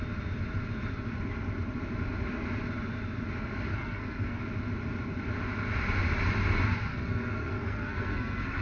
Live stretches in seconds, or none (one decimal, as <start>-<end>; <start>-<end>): 0.0-3.7; 4.4-6.9